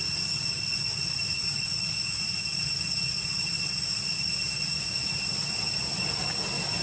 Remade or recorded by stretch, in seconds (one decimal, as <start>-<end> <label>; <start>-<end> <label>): 0.0-6.8 recorded